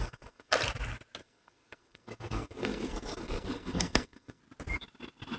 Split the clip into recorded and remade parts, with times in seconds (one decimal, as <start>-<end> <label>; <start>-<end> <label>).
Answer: 0.0-0.5 remade; 0.5-1.2 recorded; 1.2-4.4 remade; 4.4-5.4 recorded